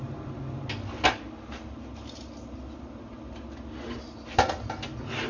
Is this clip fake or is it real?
real